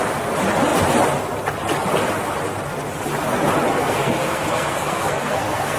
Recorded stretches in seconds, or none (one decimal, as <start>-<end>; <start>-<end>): 0.0-3.7